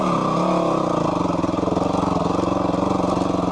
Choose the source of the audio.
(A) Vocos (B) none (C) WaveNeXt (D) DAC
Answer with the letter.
B